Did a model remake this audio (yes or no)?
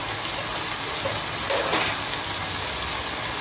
no